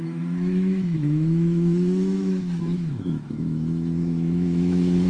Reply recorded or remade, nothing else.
remade